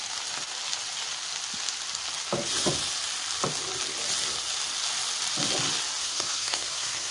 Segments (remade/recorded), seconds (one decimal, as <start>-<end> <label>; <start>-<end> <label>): 0.0-6.0 recorded; 6.0-7.1 remade